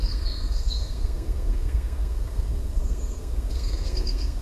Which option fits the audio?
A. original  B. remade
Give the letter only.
B